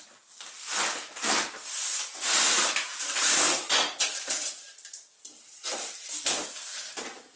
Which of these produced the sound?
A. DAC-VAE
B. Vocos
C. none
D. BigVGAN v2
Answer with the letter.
C